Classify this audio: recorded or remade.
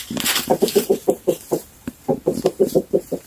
remade